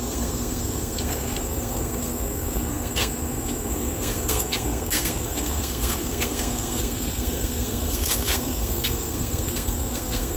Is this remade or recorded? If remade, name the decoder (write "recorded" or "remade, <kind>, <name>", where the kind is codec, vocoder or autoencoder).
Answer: remade, codec, SNAC